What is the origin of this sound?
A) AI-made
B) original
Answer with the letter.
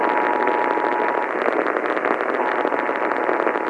B